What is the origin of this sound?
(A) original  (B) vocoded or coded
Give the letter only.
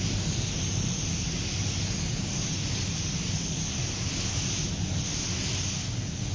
A